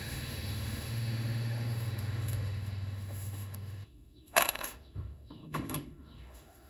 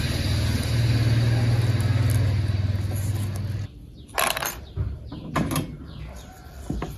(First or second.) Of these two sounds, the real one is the second